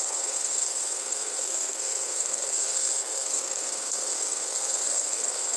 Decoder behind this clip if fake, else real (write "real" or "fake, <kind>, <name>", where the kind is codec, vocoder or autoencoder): fake, codec, SNAC